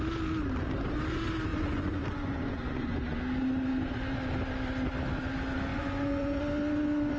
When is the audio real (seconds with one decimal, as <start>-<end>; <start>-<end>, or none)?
0.0-1.5; 3.2-5.7; 6.4-7.2